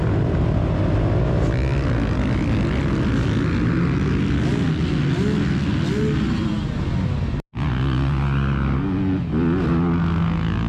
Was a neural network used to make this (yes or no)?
no